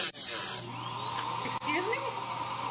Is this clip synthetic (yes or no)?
no